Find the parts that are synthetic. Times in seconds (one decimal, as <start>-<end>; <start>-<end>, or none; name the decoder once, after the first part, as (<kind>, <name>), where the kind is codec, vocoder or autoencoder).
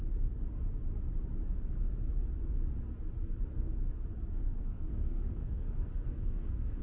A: 4.3-6.8 (codec, SNAC)